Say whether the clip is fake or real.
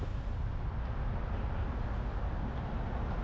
real